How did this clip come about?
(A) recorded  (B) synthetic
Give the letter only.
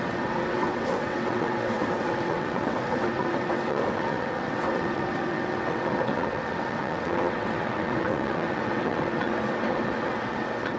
B